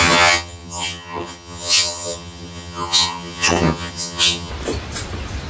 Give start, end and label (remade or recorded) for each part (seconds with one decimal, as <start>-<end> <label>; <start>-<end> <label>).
0.0-4.5 remade; 4.5-5.5 recorded